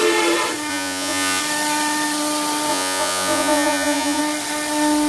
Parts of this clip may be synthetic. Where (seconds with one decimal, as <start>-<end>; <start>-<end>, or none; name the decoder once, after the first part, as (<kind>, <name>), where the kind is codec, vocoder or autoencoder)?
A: 0.7-1.4 (vocoder, Vocos); 2.7-4.2